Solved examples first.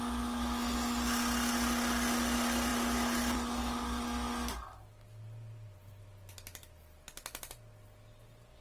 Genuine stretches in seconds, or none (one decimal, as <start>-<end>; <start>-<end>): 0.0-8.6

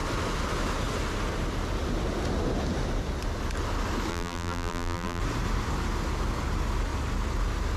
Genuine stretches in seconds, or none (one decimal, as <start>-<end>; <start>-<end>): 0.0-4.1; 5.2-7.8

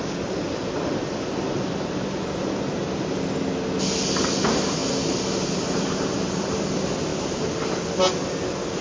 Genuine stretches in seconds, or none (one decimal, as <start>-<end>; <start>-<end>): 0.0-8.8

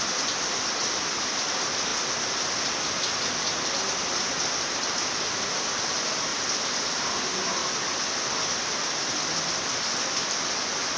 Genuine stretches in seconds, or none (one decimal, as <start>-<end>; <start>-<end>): 0.0-0.8; 1.5-6.3; 7.1-11.0